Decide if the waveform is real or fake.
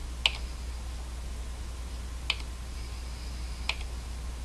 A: real